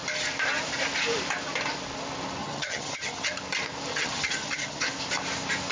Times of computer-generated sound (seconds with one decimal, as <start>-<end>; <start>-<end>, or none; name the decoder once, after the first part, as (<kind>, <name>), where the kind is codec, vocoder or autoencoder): 2.4-3.3 (vocoder, HiFi-GAN); 3.9-4.9